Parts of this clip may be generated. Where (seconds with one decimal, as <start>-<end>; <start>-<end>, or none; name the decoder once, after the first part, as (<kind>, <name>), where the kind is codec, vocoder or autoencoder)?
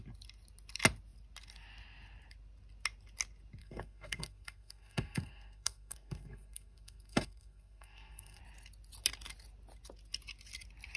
3.6-8.4 (codec, SNAC)